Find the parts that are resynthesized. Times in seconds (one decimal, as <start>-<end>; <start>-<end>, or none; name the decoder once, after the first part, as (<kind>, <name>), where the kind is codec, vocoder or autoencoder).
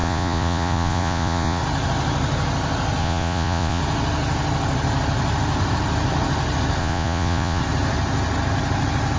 0.0-1.6 (vocoder, Vocos); 3.0-3.8; 6.8-7.6